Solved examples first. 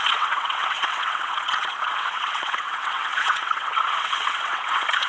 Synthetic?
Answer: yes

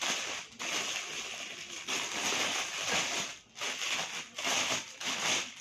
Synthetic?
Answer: no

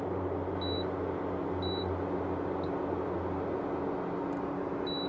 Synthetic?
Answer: no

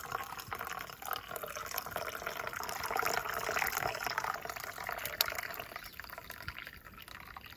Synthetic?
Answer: no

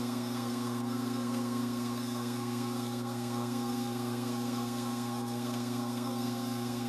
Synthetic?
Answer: yes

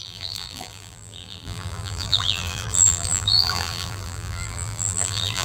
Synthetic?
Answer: yes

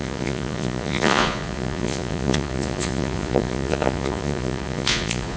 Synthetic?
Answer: yes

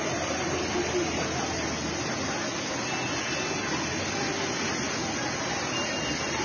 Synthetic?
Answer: no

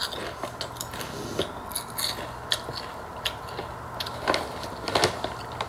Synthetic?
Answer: no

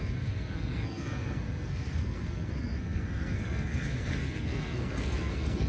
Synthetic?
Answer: yes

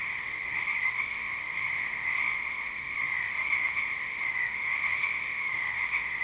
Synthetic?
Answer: yes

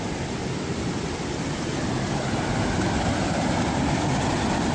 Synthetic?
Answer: no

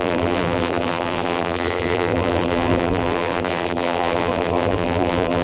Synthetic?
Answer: yes